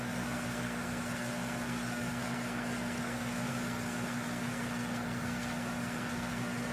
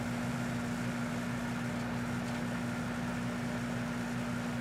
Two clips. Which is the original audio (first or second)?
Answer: second